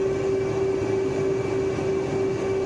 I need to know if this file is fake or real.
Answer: real